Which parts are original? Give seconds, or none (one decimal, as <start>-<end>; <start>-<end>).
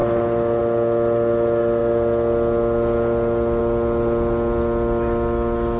0.0-5.8